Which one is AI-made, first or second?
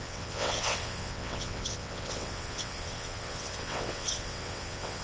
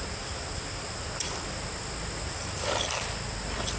first